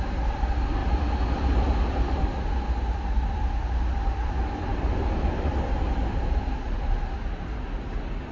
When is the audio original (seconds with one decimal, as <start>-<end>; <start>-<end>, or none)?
0.0-8.3